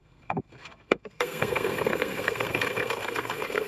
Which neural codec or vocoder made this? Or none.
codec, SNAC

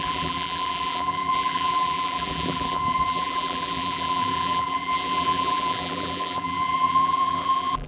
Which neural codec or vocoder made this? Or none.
vocoder, BigVGAN v2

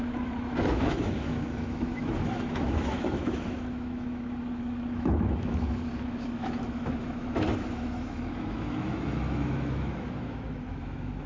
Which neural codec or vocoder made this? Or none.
autoencoder, DAC-VAE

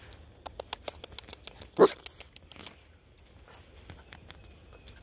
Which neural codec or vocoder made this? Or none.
none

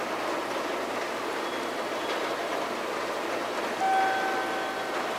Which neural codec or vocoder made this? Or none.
none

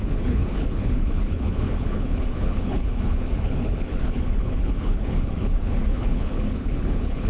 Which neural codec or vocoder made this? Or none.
codec, HILCodec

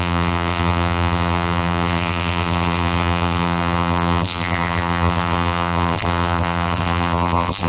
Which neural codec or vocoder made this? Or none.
vocoder, BigVGAN v2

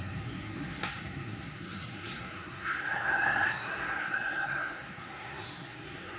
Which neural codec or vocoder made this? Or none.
codec, SNAC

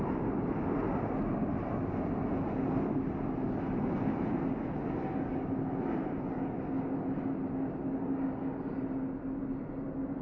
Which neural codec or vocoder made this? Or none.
none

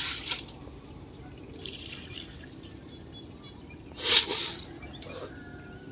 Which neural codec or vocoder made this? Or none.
none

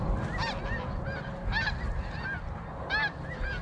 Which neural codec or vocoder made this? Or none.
none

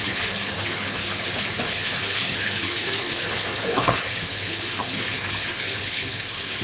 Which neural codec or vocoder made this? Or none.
codec, HILCodec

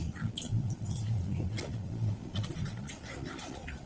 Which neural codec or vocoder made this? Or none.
vocoder, Vocos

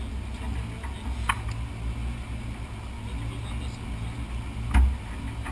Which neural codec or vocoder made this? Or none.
none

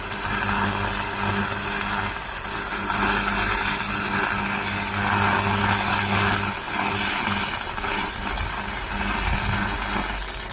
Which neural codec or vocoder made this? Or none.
none